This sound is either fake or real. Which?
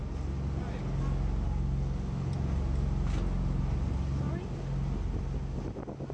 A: real